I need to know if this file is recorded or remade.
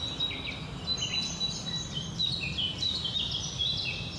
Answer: recorded